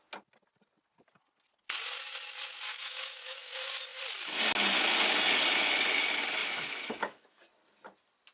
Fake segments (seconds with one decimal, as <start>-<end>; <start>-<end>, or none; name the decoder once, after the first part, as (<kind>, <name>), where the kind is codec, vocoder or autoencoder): 2.7-3.5 (autoencoder, DAC-VAE); 6.4-7.4